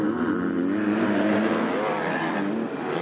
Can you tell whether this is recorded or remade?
recorded